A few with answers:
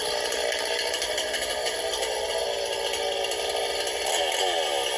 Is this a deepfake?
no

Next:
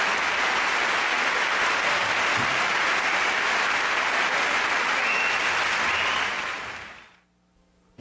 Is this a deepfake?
no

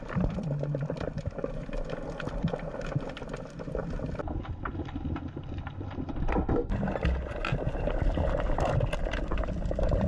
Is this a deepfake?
no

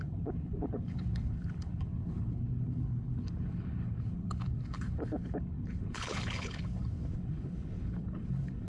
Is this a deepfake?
yes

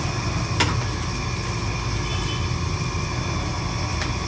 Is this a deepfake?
no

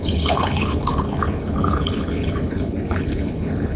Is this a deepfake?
yes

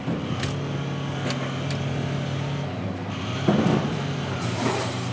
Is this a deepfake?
no